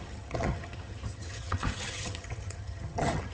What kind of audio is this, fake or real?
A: fake